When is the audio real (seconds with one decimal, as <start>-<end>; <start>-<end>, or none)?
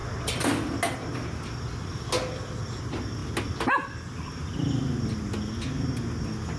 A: 0.0-6.6